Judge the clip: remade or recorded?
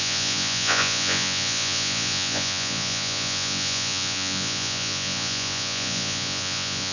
remade